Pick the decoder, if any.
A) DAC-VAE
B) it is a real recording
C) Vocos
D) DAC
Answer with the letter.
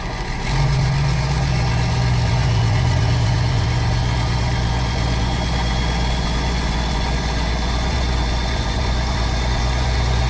C